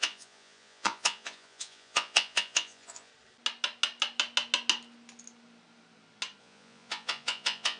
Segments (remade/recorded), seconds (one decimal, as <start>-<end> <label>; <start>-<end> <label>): 0.0-3.1 remade; 3.1-6.4 recorded; 6.4-7.8 remade